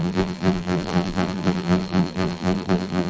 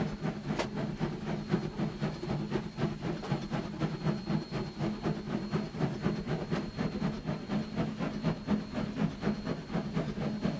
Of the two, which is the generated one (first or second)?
first